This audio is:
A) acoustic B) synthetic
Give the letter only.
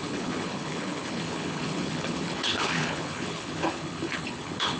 B